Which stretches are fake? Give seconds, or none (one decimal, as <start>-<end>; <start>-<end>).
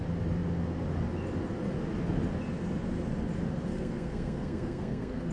3.7-5.3